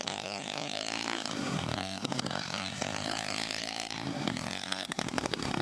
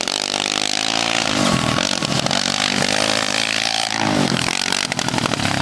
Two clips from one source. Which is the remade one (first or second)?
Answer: first